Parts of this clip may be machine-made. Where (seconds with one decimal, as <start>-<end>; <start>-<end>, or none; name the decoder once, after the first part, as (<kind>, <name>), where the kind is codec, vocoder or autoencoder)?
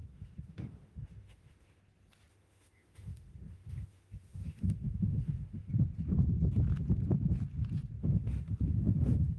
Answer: 0.0-1.8 (autoencoder, DAC-VAE); 2.3-5.7; 8.0-9.4